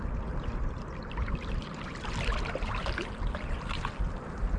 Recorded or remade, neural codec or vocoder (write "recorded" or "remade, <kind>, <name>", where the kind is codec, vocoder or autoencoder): recorded